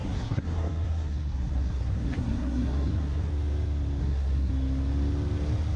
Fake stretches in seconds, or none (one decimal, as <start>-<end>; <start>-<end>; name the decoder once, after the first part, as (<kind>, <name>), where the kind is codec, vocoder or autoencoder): 0.0-3.3 (codec, SNAC); 4.0-4.5